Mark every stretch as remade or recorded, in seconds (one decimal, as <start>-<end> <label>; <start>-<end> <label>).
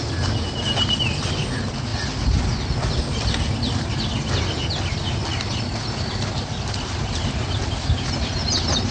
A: 0.0-8.9 recorded